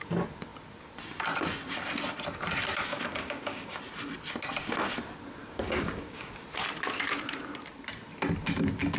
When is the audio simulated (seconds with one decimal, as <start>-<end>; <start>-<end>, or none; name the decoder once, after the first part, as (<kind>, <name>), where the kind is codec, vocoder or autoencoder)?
2.9-3.8 (codec, DAC); 5.4-6.3